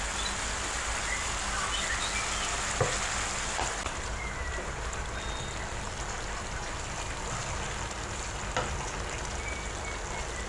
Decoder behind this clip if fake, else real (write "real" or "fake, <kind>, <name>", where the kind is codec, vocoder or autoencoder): real